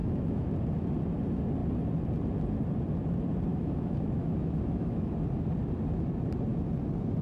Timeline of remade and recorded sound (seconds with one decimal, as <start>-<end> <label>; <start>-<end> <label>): 0.0-0.5 remade; 0.5-3.5 recorded; 3.5-5.1 remade; 5.1-7.2 recorded